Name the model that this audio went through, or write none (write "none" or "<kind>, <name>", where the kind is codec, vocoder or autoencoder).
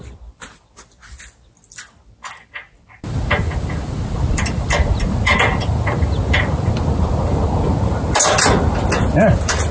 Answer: none